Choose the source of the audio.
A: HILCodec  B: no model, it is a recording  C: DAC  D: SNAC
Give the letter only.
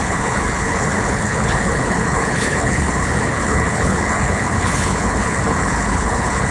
A